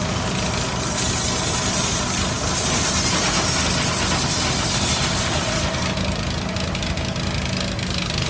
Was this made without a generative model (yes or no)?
yes